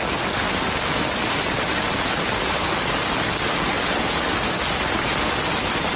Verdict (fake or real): real